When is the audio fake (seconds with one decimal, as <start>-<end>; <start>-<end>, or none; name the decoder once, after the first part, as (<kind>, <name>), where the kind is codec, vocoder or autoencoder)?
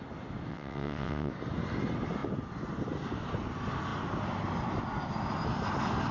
0.5-1.3 (vocoder, WaveNeXt)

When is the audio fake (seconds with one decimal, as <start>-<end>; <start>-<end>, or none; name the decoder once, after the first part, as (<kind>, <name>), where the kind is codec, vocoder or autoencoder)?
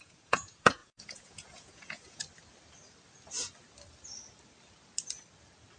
0.0-2.2 (vocoder, Vocos)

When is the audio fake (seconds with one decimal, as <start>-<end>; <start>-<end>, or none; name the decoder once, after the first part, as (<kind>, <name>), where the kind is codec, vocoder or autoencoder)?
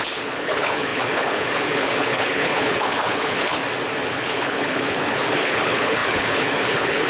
0.0-3.6 (codec, HILCodec); 4.1-7.1